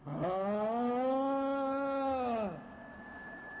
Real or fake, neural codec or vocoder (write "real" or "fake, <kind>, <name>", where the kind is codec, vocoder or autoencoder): real